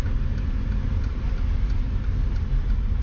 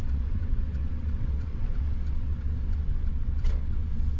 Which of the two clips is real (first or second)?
first